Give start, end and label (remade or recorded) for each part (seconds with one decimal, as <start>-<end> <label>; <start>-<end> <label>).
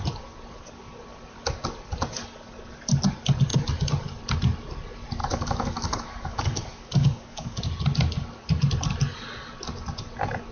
0.0-5.2 recorded; 5.2-7.6 remade; 7.6-10.5 recorded